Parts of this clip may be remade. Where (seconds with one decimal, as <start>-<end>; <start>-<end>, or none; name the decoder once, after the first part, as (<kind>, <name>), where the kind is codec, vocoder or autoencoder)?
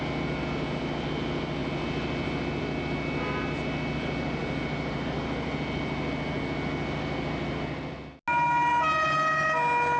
none